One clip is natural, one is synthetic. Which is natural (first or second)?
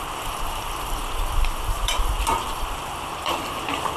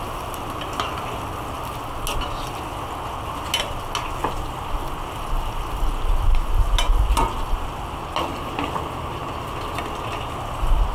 second